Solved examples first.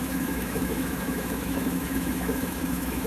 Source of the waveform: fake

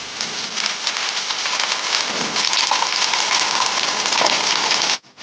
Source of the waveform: real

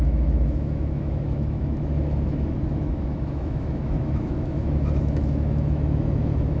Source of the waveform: fake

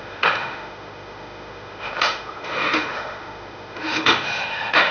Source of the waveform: fake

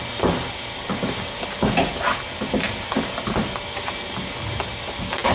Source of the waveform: real